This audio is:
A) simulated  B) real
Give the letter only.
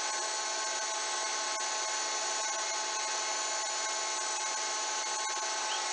B